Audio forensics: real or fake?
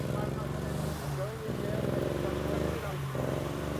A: real